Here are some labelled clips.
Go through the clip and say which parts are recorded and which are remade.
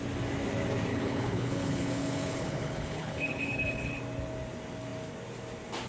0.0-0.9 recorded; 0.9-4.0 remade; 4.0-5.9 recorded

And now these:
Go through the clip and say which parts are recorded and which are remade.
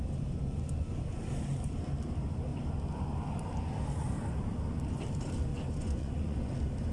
0.0-5.5 recorded; 5.5-6.5 remade; 6.5-6.9 recorded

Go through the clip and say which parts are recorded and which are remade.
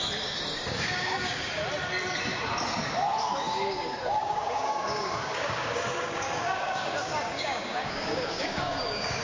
0.0-0.6 recorded; 0.6-1.6 remade; 1.6-3.3 recorded; 3.3-9.2 remade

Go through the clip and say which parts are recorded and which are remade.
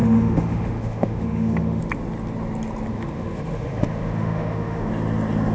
0.0-1.8 remade; 1.8-2.9 recorded; 2.9-4.9 remade; 4.9-5.5 recorded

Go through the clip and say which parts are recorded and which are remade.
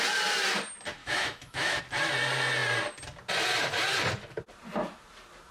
0.0-1.0 recorded; 1.0-1.8 remade; 1.8-5.5 recorded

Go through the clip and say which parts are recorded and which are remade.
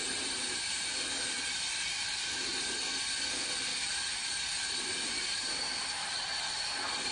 0.0-7.1 recorded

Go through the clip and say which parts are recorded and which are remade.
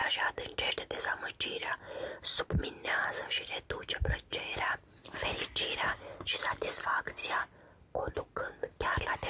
0.0-9.3 recorded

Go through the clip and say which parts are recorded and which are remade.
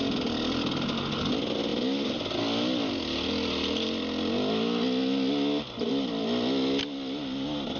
0.0-7.8 recorded